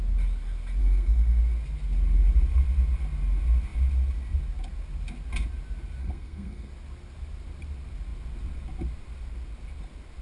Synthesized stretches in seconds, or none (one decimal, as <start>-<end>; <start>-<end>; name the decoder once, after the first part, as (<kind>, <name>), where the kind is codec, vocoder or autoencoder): 0.8-1.4 (codec, SNAC); 6.0-6.7